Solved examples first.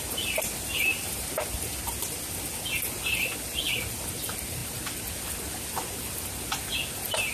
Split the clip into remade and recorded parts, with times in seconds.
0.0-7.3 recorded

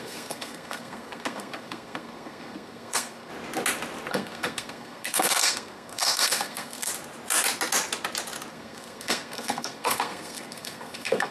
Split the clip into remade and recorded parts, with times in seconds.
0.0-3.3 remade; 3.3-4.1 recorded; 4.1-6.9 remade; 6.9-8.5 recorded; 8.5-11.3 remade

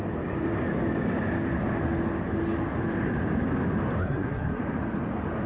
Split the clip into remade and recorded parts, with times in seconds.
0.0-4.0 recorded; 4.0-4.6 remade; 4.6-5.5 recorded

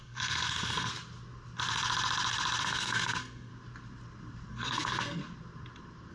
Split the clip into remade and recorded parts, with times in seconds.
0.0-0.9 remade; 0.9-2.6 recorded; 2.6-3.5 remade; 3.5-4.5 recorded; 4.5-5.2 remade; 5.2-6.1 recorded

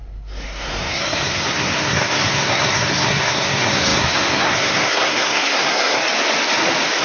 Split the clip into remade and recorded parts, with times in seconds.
0.0-6.0 remade; 6.0-7.0 recorded

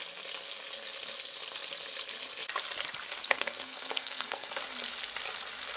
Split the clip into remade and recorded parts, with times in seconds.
0.0-3.2 recorded; 3.2-4.5 remade; 4.5-5.8 recorded